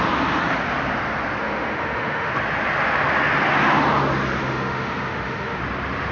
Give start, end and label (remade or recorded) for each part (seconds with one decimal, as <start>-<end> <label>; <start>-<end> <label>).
0.0-1.4 recorded; 1.4-2.3 remade; 2.3-4.4 recorded; 4.4-5.6 remade; 5.6-6.1 recorded

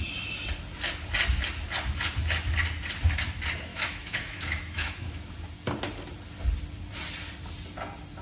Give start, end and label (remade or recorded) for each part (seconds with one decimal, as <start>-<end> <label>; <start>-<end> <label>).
0.0-3.7 recorded; 3.7-5.2 remade; 5.2-8.2 recorded

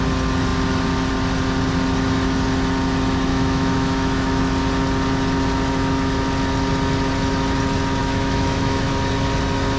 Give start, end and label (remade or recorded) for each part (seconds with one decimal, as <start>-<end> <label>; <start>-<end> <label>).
0.0-3.3 recorded; 3.3-4.4 remade; 4.4-8.0 recorded; 8.0-8.9 remade; 8.9-9.8 recorded

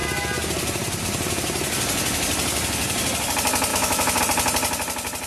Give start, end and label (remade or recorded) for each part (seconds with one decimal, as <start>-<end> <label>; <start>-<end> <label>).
0.0-3.7 recorded; 3.7-4.2 remade; 4.2-5.3 recorded

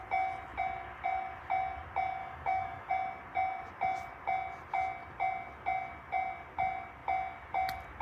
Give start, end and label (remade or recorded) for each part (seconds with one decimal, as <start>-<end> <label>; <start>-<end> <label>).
0.0-2.2 recorded; 2.2-2.9 remade; 2.9-8.0 recorded

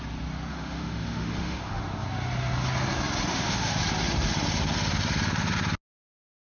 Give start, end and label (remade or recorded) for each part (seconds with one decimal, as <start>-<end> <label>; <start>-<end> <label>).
0.0-0.5 recorded; 0.5-1.8 remade; 1.8-3.3 recorded; 3.3-3.8 remade; 3.8-6.6 recorded

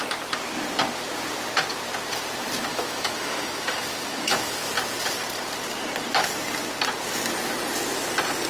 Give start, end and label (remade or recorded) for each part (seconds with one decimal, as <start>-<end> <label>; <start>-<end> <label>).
0.0-2.7 recorded; 2.7-4.7 remade; 4.7-8.5 recorded